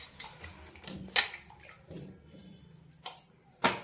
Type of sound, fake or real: real